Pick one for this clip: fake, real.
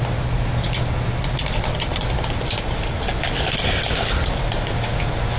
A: real